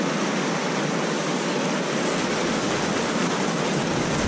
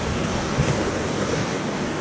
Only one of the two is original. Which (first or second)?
first